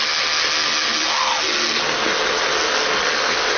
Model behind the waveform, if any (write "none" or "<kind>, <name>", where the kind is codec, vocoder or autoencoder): none